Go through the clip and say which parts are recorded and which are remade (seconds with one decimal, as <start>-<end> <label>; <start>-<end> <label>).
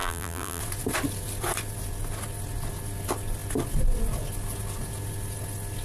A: 0.0-0.6 remade; 0.6-5.8 recorded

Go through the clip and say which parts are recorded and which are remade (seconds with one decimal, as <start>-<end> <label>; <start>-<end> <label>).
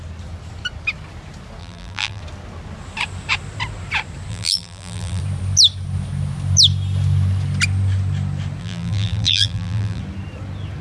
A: 0.0-1.6 recorded; 1.6-2.2 remade; 2.2-4.3 recorded; 4.3-5.2 remade; 5.2-8.6 recorded; 8.6-10.0 remade; 10.0-10.8 recorded